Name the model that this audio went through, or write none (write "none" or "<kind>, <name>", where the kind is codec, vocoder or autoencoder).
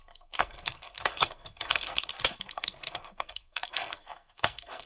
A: codec, SNAC